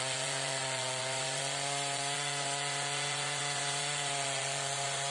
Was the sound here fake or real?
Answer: fake